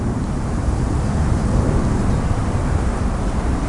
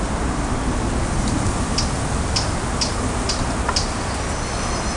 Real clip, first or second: second